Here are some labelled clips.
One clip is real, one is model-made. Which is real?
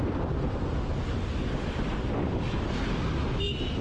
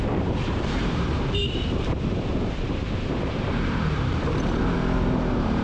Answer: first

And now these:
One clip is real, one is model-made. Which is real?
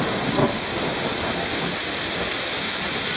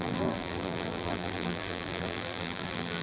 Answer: first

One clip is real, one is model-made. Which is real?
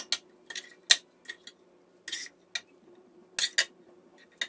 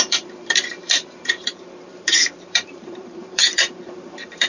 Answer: first